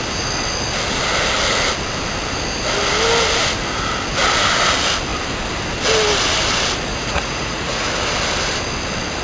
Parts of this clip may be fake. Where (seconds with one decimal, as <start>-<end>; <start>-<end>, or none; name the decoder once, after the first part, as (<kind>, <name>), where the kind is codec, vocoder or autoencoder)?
6.9-7.9 (vocoder, Vocos)